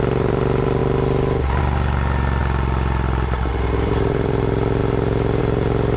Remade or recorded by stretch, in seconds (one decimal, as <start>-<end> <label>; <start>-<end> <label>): 0.0-0.8 remade; 0.8-1.6 recorded; 1.6-2.4 remade; 2.4-3.5 recorded; 3.5-6.0 remade